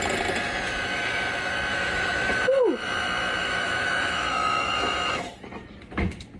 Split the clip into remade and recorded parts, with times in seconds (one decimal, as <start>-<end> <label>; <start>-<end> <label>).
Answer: 0.0-1.7 recorded; 1.7-2.6 remade; 2.6-3.4 recorded; 3.4-5.4 remade; 5.4-6.4 recorded